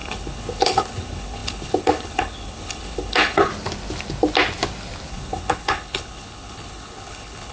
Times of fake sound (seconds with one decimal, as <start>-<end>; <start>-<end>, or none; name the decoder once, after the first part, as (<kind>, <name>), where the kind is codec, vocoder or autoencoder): 0.0-3.5 (codec, HILCodec); 5.1-7.5